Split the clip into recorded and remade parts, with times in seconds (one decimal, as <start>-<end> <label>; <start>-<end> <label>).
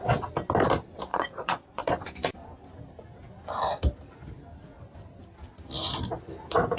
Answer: 0.0-1.1 recorded; 1.1-1.9 remade; 1.9-6.8 recorded